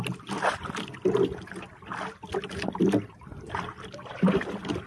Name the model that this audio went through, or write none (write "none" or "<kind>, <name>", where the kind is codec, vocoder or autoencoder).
none